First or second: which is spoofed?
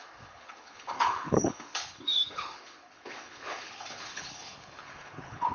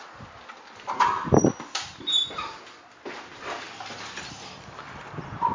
first